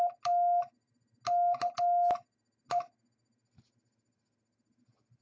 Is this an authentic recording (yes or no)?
yes